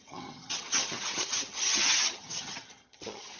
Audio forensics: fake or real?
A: fake